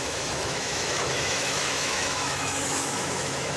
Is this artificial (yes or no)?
yes